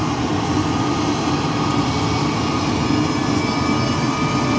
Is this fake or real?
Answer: real